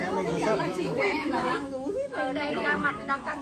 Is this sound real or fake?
fake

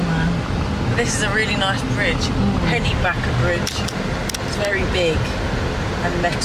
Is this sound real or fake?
real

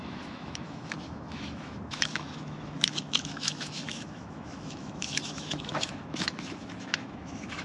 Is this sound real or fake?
fake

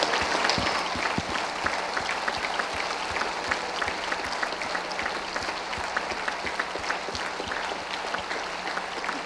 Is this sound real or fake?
real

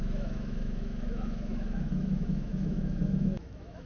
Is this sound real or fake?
fake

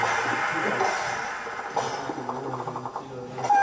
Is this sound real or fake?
real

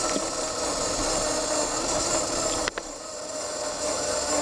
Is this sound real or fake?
real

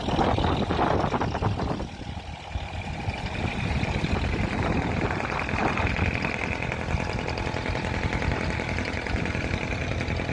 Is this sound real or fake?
real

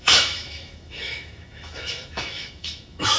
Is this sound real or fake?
fake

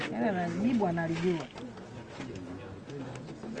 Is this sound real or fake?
real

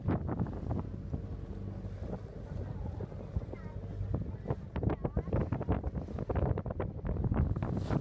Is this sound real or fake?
real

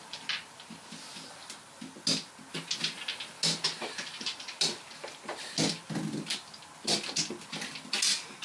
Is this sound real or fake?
real